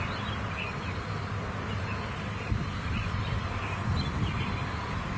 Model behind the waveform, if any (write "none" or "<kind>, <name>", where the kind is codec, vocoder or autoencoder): none